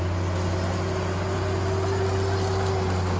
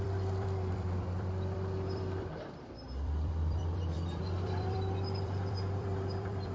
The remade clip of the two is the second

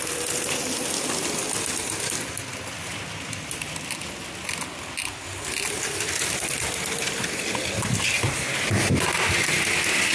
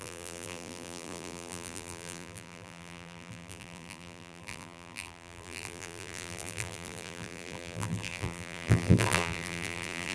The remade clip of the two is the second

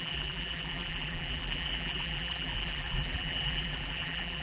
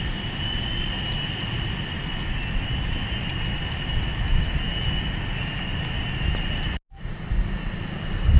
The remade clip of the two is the first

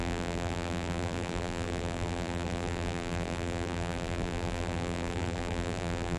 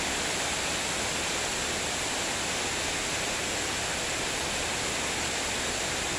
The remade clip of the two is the first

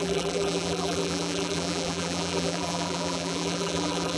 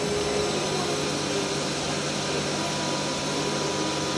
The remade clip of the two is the first